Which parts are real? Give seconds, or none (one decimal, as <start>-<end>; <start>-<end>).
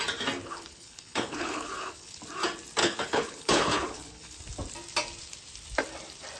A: 0.0-0.4; 2.2-2.8; 4.4-6.4